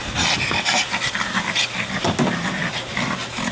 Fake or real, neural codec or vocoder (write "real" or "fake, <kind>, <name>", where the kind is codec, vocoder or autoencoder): real